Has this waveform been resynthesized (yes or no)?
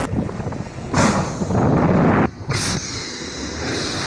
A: no